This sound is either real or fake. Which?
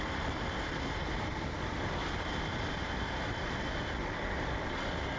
real